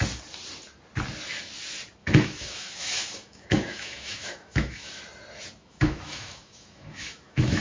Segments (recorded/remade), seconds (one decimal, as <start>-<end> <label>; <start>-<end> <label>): 0.0-2.0 recorded; 2.0-5.0 remade; 5.0-5.6 recorded; 5.6-7.6 remade